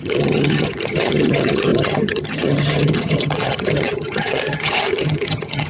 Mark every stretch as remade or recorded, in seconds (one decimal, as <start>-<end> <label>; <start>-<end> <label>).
0.0-5.7 remade